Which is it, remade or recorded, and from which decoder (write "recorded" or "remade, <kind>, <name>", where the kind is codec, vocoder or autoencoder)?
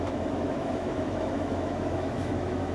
remade, autoencoder, DAC-VAE